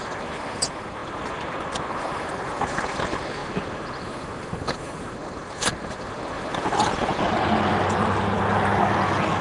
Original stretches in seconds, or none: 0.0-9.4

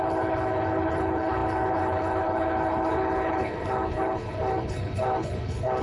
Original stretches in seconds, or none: none

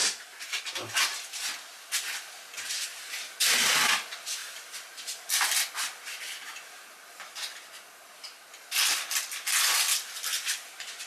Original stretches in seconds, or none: 0.0-11.1

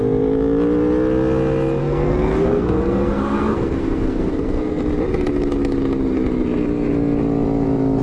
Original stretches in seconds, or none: 0.0-1.8; 4.8-8.0

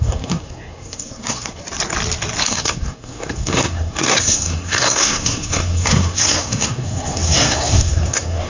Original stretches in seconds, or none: 1.6-2.4